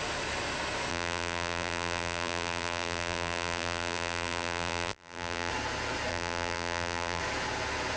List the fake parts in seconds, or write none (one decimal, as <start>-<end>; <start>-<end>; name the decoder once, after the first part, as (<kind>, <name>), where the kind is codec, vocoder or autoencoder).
0.9-5.5 (vocoder, BigVGAN v2); 6.1-7.2